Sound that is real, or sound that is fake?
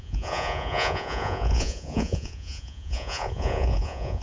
fake